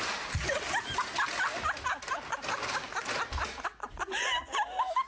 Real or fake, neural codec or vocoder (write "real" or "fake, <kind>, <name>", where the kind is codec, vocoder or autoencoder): real